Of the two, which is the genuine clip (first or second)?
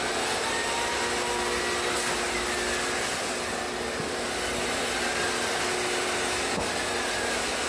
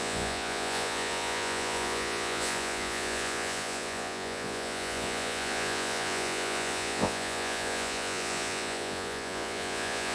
first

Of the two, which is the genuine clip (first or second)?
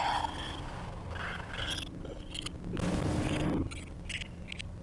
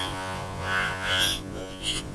first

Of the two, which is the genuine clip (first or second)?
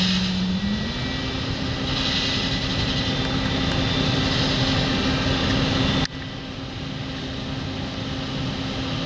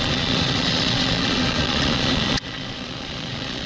first